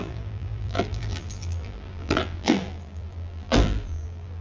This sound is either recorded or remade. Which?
remade